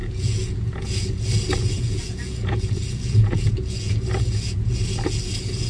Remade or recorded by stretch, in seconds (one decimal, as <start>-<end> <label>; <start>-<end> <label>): 0.0-1.3 remade; 1.3-1.8 recorded; 1.8-4.7 remade; 4.7-5.7 recorded